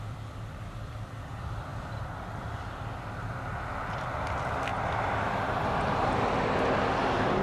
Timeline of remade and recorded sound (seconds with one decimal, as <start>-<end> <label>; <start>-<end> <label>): 0.0-7.4 recorded